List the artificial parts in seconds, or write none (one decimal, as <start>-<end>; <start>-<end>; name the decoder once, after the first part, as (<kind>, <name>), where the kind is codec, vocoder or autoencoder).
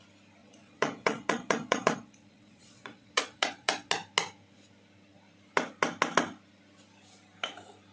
0.4-3.9 (vocoder, Vocos)